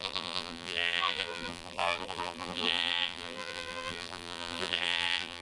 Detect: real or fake fake